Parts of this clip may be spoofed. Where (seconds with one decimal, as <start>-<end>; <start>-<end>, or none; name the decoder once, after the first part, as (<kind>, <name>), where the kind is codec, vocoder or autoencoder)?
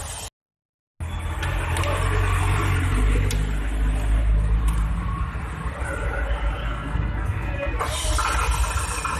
6.6-7.8 (codec, SNAC)